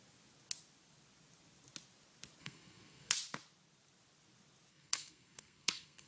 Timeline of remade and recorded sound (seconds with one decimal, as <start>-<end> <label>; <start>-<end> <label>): 0.0-2.4 recorded; 2.4-3.1 remade; 3.1-4.7 recorded; 4.7-6.1 remade